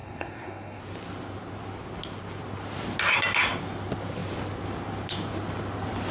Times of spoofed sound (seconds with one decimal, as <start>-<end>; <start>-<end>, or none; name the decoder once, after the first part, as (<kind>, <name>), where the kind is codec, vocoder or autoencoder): 0.0-0.8 (codec, SNAC)